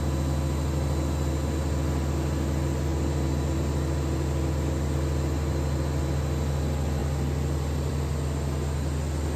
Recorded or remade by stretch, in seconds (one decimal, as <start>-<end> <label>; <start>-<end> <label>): 0.0-9.4 recorded